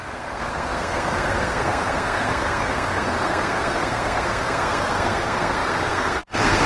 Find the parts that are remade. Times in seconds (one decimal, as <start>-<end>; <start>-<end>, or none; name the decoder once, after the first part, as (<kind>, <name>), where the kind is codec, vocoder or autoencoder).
0.0-6.7 (codec, SNAC)